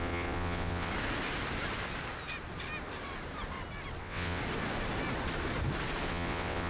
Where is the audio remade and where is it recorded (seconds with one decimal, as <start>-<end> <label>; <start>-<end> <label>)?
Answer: 0.0-0.9 remade; 0.9-4.0 recorded; 4.0-4.4 remade; 4.4-6.1 recorded; 6.1-6.7 remade